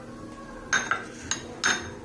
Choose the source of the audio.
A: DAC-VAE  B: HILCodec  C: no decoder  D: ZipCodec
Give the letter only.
C